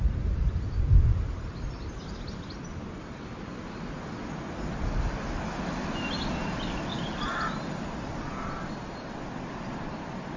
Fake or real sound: real